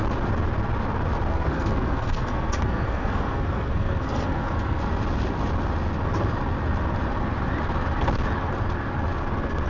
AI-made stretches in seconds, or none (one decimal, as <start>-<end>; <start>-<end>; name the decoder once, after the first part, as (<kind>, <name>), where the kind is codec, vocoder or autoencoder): 1.3-4.8 (codec, SNAC)